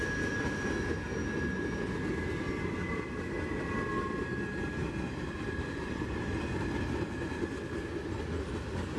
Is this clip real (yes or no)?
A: yes